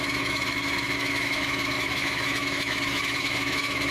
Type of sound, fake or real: fake